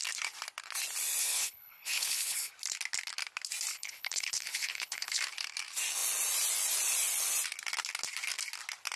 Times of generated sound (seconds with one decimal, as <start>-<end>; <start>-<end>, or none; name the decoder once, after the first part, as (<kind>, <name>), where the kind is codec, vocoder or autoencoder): 1.2-2.5 (codec, HILCodec); 3.7-5.2